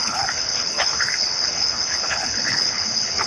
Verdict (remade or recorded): remade